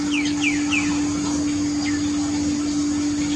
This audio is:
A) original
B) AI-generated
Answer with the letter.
A